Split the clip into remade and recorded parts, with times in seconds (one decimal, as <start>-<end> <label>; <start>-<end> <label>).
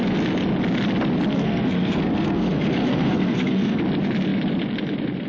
0.0-1.3 recorded; 1.3-3.8 remade; 3.8-5.3 recorded